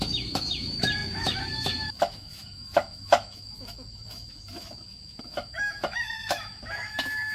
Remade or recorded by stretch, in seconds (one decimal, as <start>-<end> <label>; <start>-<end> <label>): 0.0-7.3 remade